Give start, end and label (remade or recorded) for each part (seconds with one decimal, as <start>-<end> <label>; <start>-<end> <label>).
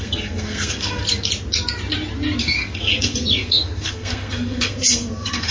0.0-1.0 remade; 1.0-2.4 recorded; 2.4-5.5 remade